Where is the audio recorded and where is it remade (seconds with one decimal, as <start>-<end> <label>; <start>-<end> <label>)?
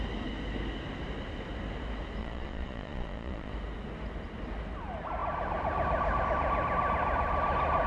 0.0-2.2 recorded; 2.2-3.5 remade; 3.5-7.9 recorded